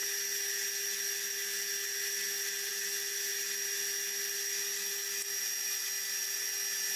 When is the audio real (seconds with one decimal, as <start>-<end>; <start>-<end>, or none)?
0.0-7.0